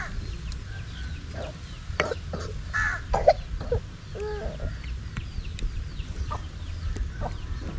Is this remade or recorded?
recorded